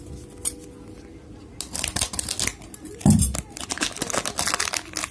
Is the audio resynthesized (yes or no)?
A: no